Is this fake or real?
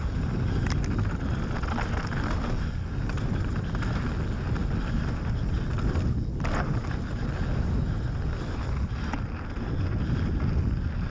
real